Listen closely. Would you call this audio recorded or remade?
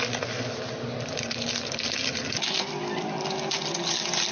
recorded